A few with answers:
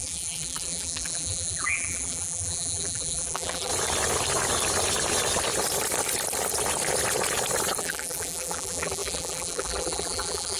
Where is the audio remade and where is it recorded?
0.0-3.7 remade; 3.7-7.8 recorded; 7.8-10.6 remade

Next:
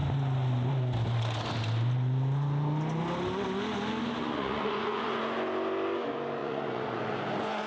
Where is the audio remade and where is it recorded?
0.0-4.2 recorded; 4.2-5.2 remade; 5.2-6.4 recorded; 6.4-7.7 remade

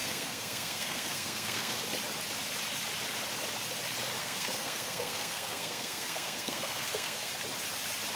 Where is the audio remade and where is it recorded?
0.0-1.8 remade; 1.8-4.2 recorded; 4.2-7.3 remade; 7.3-8.2 recorded

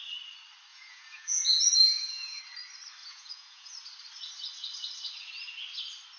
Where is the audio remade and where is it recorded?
0.0-0.7 recorded; 0.7-2.4 remade; 2.4-3.0 recorded; 3.0-3.7 remade; 3.7-6.2 recorded

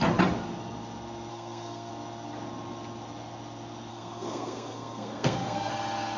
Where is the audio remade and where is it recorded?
0.0-1.3 recorded; 1.3-1.9 remade; 1.9-3.9 recorded; 3.9-5.7 remade; 5.7-6.2 recorded

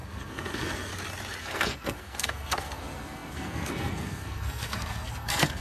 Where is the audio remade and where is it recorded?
0.0-0.9 remade; 0.9-1.4 recorded; 1.4-5.6 remade